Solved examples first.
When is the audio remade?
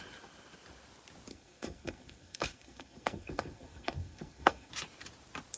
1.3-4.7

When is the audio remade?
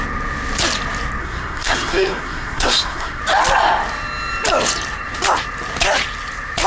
1.2-3.2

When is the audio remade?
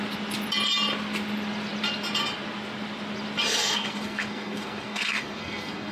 3.6-5.9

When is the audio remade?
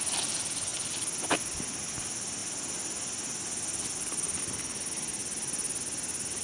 none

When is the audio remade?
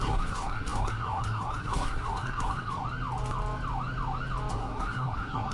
0.0-2.8; 4.5-5.5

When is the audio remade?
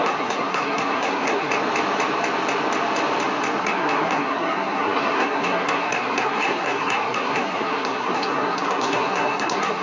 0.0-1.5; 3.6-9.8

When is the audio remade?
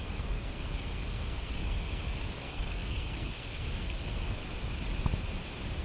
0.0-4.4